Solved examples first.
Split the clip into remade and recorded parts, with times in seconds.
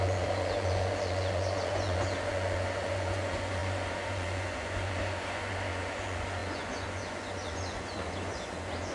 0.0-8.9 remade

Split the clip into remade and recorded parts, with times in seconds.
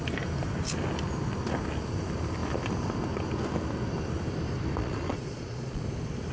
0.0-4.8 recorded; 4.8-5.8 remade; 5.8-6.3 recorded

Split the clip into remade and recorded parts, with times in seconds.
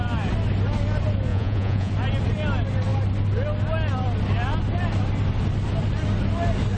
0.0-1.3 recorded; 1.3-1.9 remade; 1.9-6.8 recorded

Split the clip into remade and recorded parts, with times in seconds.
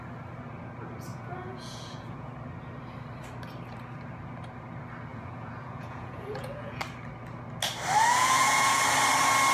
0.0-1.1 recorded; 1.1-2.3 remade; 2.3-5.1 recorded; 5.1-6.8 remade; 6.8-8.1 recorded; 8.1-8.8 remade; 8.8-9.5 recorded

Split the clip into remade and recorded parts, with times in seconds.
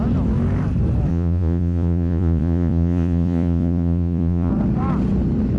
0.0-1.1 recorded; 1.1-4.5 remade; 4.5-5.6 recorded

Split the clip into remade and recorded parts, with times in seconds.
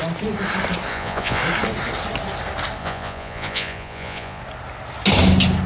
0.0-0.9 recorded; 0.9-1.4 remade; 1.4-2.8 recorded; 2.8-4.4 remade; 4.4-5.7 recorded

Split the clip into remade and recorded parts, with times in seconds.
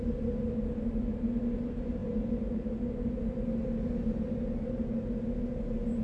0.0-6.0 recorded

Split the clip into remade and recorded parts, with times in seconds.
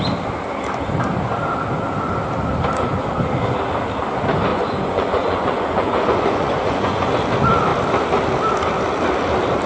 0.0-4.5 recorded; 4.5-7.1 remade; 7.1-9.7 recorded